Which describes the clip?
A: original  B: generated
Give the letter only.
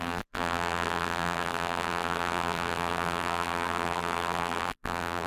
B